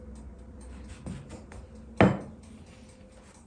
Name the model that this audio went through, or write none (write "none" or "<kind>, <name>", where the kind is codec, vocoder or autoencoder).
none